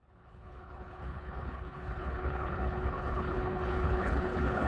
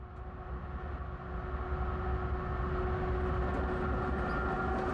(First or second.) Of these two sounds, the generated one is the first